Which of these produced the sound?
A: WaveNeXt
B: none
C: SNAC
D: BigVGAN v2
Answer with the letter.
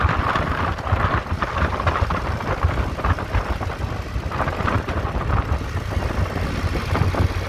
B